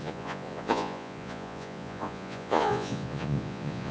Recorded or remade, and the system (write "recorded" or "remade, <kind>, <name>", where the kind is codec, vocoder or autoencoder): remade, vocoder, Vocos